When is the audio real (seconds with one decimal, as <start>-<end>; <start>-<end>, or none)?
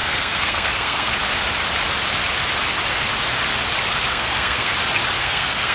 1.1-4.1; 4.7-5.2